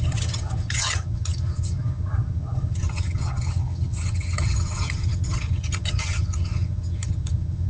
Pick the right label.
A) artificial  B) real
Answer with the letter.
A